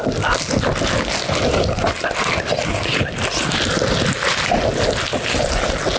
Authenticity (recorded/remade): recorded